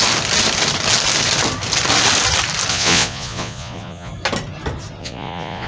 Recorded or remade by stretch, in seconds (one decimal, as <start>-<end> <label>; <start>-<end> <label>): 0.0-2.7 recorded; 2.7-4.1 remade; 4.1-5.0 recorded; 5.0-5.7 remade